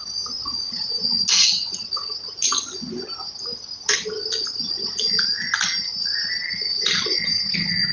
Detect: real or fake real